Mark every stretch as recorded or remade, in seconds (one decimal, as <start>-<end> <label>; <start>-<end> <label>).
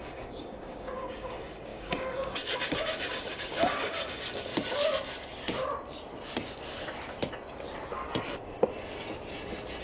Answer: 0.0-4.5 remade; 4.5-9.8 recorded